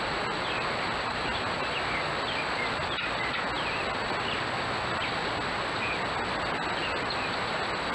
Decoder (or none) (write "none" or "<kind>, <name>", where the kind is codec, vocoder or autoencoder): none